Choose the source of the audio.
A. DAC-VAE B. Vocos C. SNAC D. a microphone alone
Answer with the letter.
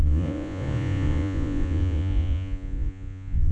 B